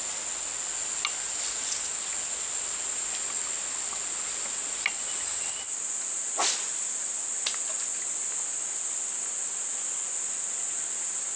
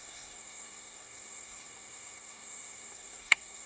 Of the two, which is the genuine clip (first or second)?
first